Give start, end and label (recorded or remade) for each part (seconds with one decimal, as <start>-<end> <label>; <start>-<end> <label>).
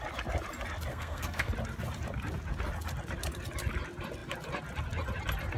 0.0-0.9 recorded; 0.9-1.5 remade; 1.5-5.6 recorded